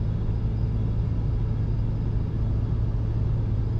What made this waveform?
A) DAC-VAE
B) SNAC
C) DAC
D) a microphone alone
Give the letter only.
D